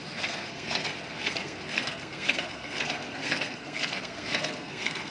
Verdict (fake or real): fake